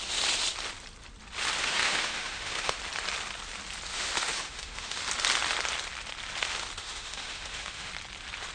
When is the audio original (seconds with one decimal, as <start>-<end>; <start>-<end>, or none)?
0.0-1.6; 2.8-3.9; 5.0-6.8; 7.9-8.5